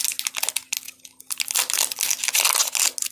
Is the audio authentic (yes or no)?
yes